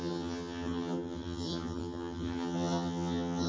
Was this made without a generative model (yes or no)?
no